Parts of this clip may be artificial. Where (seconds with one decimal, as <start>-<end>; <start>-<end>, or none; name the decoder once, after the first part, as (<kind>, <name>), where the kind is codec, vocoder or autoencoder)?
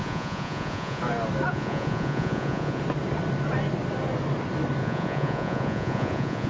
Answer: 0.0-1.0 (vocoder, Vocos); 1.5-2.8; 4.8-6.5